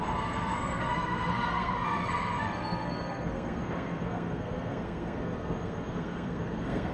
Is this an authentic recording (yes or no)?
no